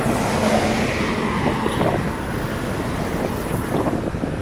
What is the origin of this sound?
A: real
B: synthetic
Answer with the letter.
A